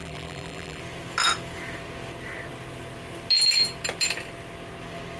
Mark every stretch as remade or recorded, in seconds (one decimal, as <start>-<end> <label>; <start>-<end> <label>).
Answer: 0.0-0.8 remade; 0.8-5.2 recorded